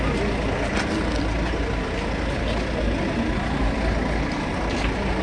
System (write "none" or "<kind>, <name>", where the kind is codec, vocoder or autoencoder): none